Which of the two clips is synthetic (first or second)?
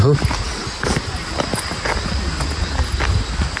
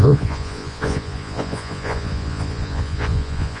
second